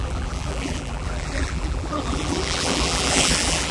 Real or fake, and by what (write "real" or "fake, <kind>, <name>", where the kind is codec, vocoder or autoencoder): fake, vocoder, BigVGAN v2